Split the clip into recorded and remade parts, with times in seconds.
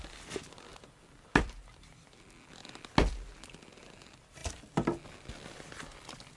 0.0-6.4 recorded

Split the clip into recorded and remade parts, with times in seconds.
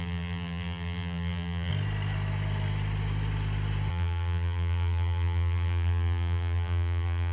0.0-1.7 remade; 1.7-3.9 recorded; 3.9-7.3 remade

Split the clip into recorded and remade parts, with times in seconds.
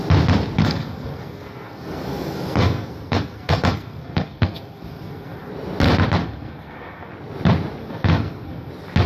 0.0-0.6 recorded; 0.6-5.5 remade; 5.5-6.2 recorded; 6.2-7.1 remade; 7.1-7.8 recorded; 7.8-8.7 remade; 8.7-9.1 recorded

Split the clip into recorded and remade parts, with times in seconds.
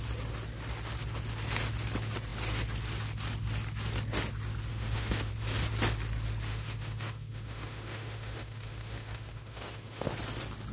0.0-4.7 recorded; 4.7-5.3 remade; 5.3-6.5 recorded; 6.5-10.2 remade; 10.2-10.7 recorded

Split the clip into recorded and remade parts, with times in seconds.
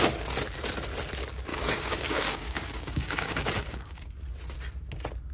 0.0-1.5 recorded; 1.5-4.1 remade; 4.1-5.3 recorded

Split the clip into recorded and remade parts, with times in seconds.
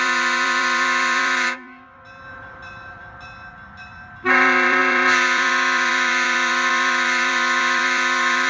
0.0-8.5 remade